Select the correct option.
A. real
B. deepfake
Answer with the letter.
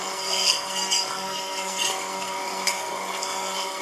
B